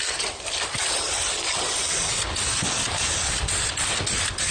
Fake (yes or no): no